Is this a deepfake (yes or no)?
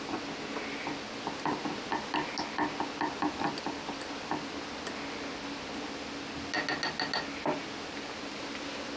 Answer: no